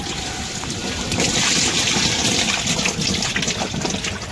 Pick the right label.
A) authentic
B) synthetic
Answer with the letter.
A